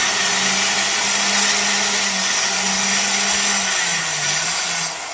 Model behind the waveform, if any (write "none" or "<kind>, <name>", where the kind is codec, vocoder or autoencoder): none